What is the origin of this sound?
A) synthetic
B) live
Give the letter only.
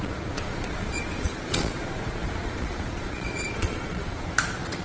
A